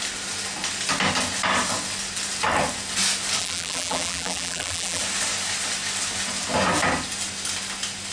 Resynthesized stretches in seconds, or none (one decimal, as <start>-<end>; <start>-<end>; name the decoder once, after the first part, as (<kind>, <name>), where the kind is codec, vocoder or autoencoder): 3.4-5.0 (vocoder, BigVGAN v2)